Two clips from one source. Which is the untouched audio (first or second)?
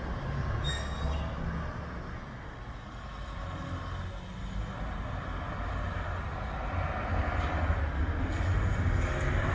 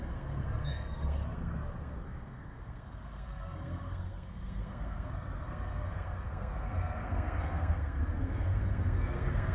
first